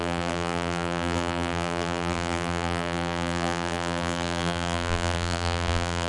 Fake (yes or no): yes